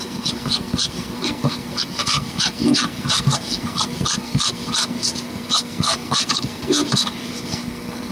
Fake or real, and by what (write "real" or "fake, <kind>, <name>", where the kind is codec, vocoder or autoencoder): fake, codec, SNAC